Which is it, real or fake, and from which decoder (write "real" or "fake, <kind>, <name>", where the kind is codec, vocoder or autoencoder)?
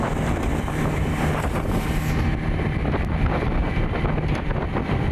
fake, vocoder, BigVGAN v2